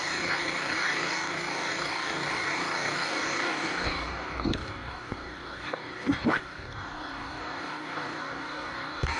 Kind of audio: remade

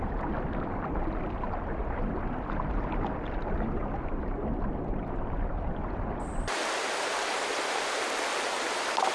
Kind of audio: recorded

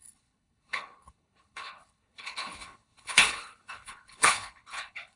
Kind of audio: remade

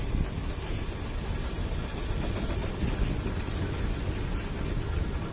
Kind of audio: recorded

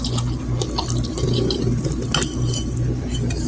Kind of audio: recorded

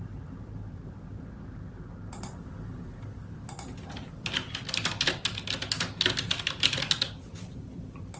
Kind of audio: recorded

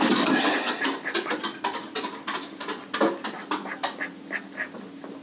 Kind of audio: recorded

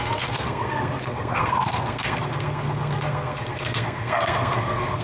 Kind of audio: remade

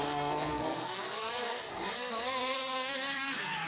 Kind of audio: remade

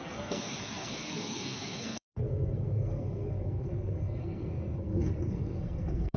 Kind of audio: remade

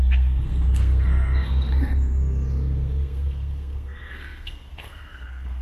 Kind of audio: remade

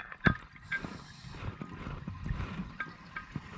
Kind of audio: recorded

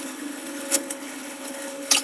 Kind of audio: remade